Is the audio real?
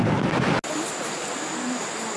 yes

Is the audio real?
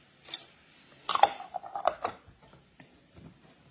yes